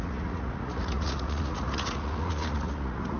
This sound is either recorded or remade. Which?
remade